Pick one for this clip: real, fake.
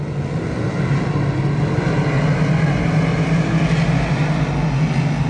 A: real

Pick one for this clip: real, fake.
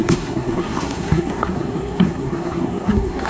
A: fake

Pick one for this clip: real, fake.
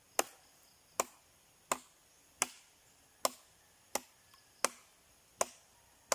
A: real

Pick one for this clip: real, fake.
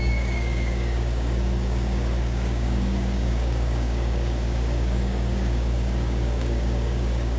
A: fake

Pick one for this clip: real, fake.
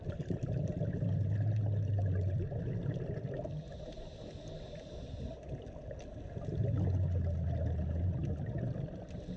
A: real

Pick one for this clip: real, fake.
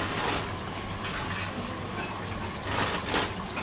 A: real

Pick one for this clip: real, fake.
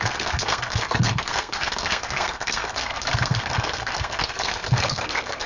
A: fake